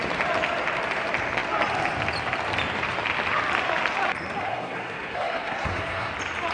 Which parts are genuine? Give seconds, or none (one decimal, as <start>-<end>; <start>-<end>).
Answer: 0.0-4.4; 6.1-6.5

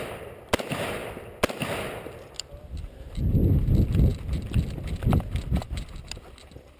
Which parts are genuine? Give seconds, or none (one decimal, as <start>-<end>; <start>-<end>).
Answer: 0.0-6.8

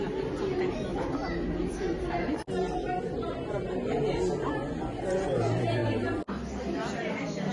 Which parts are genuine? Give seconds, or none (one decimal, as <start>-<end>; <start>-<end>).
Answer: 0.0-7.5

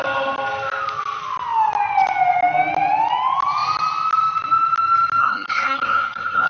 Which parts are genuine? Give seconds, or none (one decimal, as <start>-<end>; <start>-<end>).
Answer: 0.0-5.2

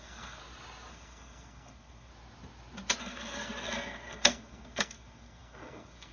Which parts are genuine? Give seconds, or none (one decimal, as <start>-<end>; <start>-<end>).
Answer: 0.4-0.9; 2.1-3.0

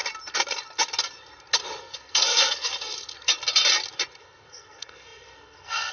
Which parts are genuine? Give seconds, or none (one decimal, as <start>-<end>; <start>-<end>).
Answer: 0.0-1.8; 2.7-4.2

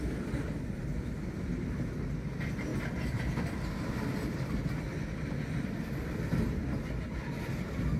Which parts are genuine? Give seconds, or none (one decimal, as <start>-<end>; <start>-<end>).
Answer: 0.0-8.0

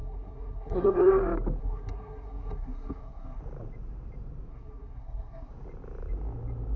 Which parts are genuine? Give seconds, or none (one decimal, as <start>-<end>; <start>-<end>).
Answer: 1.1-1.6; 3.4-4.5; 5.5-6.8